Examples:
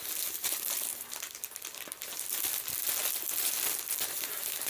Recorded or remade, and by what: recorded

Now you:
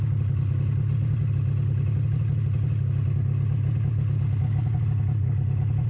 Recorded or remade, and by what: recorded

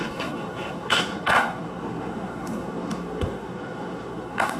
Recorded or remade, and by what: remade, codec, SNAC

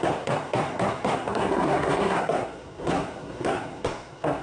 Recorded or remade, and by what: remade, codec, SNAC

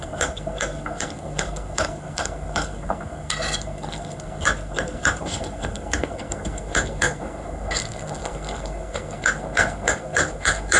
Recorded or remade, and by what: remade, codec, SNAC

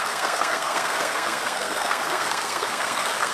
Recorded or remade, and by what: remade, codec, SNAC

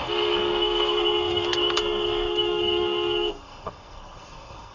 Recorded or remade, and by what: remade, codec, SNAC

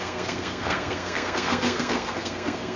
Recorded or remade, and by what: remade, codec, SNAC